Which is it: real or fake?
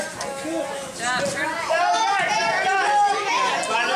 real